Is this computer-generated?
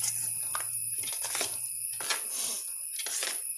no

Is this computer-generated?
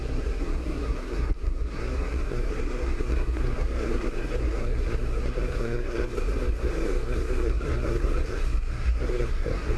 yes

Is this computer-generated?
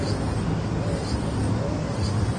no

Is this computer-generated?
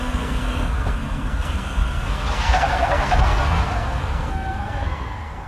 yes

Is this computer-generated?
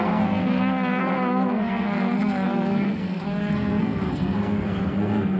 yes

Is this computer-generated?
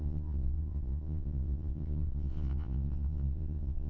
yes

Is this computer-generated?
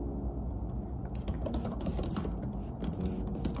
no